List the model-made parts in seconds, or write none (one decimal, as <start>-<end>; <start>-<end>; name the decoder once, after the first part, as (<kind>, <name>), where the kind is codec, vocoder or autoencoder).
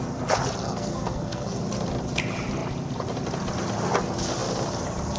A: 0.6-1.6 (codec, SNAC)